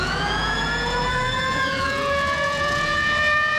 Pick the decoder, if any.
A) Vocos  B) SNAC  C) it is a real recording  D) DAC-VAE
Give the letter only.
A